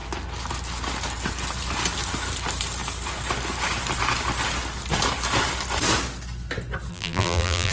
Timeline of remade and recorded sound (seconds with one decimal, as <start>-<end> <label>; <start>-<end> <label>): 0.0-6.9 recorded; 6.9-7.7 remade